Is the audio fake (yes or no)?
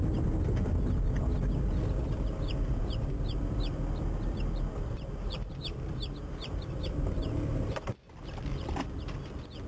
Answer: no